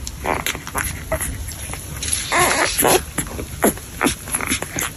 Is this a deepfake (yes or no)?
no